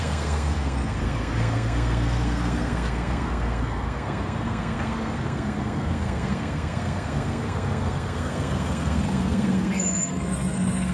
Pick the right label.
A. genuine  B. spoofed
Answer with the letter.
B